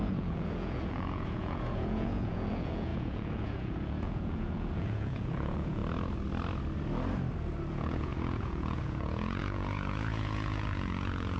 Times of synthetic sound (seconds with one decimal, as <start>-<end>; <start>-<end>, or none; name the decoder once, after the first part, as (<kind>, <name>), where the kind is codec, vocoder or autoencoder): 0.0-5.8 (vocoder, Vocos); 7.7-11.4